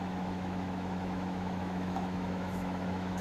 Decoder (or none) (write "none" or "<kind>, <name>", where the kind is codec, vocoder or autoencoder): autoencoder, DAC-VAE